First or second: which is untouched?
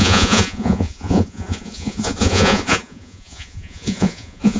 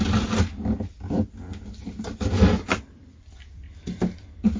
second